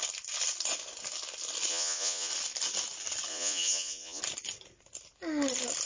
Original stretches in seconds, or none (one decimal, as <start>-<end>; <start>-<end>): 0.0-1.7; 2.3-3.3; 4.2-5.8